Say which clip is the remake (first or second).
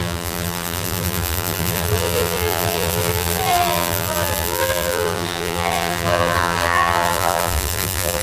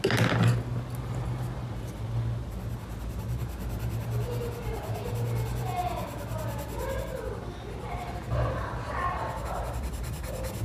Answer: first